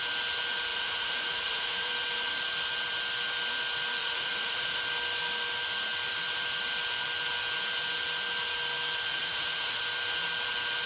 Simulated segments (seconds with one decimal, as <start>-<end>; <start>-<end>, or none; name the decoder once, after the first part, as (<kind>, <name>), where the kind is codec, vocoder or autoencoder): 0.7-1.9 (vocoder, Vocos); 4.0-4.8; 9.1-9.8